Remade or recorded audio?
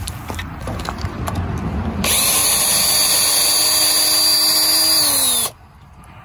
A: recorded